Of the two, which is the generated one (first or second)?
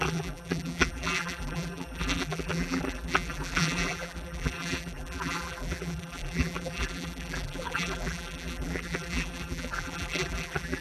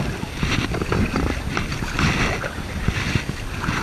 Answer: first